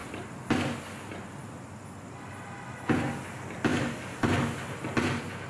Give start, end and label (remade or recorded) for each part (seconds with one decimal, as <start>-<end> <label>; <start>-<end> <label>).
0.0-5.5 recorded